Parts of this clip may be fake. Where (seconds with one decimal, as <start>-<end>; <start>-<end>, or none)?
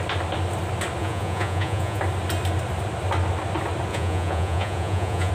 1.0-2.0; 3.9-5.3